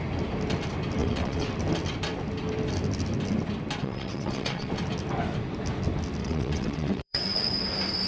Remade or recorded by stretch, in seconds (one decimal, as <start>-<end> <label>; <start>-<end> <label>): 0.0-1.0 recorded; 1.0-1.5 remade; 1.5-3.8 recorded; 3.8-4.7 remade; 4.7-6.2 recorded; 6.2-7.5 remade; 7.5-8.1 recorded